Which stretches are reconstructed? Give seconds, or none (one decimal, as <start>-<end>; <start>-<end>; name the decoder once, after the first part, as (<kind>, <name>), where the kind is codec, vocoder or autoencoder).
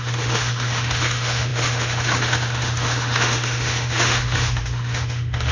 0.0-5.5 (autoencoder, DAC-VAE)